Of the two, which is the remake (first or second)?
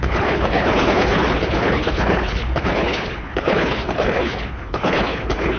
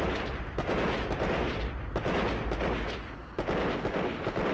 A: first